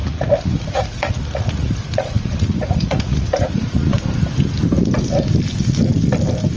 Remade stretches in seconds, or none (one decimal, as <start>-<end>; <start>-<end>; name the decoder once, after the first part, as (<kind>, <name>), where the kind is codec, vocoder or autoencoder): 0.0-4.0 (vocoder, Vocos)